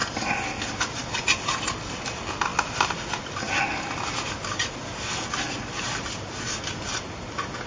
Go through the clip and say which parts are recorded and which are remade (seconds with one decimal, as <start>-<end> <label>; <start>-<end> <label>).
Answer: 0.0-1.0 recorded; 1.0-1.5 remade; 1.5-2.5 recorded; 2.5-3.2 remade; 3.2-7.7 recorded